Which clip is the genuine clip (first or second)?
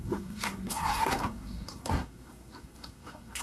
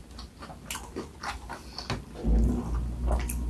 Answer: second